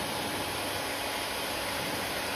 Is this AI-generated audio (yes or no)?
no